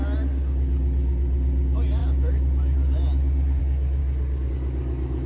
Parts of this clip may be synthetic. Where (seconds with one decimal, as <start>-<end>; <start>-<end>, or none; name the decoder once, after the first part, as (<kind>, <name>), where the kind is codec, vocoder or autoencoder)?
none